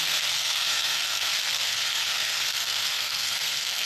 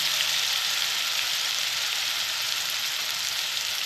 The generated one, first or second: first